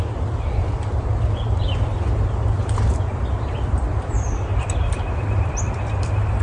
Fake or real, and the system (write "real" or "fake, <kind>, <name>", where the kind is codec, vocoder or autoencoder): fake, vocoder, BigVGAN v2